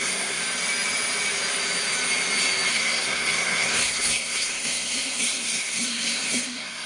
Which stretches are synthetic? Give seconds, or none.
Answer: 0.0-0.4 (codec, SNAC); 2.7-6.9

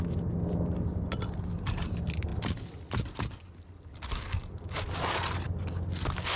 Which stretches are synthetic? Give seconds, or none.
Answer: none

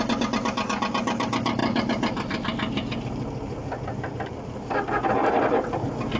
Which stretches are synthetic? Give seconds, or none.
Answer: none